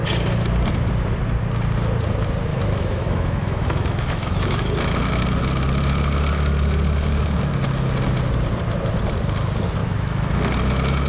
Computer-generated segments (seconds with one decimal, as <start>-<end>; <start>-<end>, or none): 2.5-4.7; 9.8-10.3